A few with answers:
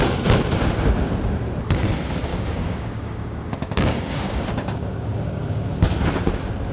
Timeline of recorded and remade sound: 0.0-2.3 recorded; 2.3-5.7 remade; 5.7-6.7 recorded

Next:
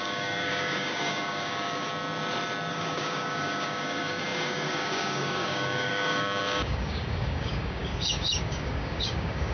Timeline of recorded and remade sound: 0.0-1.9 remade; 1.9-2.7 recorded; 2.7-9.5 remade

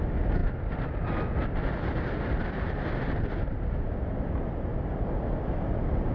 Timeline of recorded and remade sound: 0.0-6.1 recorded

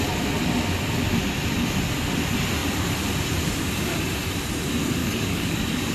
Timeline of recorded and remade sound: 0.0-5.0 recorded; 5.0-5.9 remade

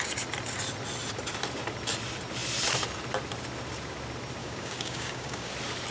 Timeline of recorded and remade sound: 0.0-4.4 recorded; 4.4-5.5 remade; 5.5-5.9 recorded

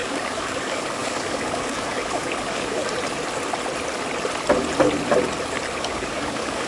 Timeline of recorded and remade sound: 0.0-2.8 remade; 2.8-5.8 recorded; 5.8-6.7 remade

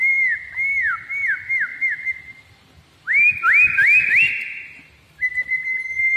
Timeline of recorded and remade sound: 0.0-6.2 recorded

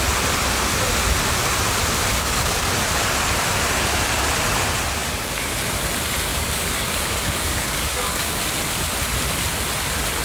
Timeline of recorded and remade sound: 0.0-2.1 recorded; 2.1-2.7 remade; 2.7-5.0 recorded; 5.0-5.6 remade; 5.6-6.3 recorded; 6.3-8.4 remade; 8.4-10.2 recorded